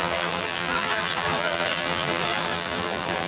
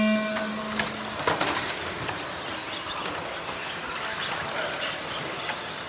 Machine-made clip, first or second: first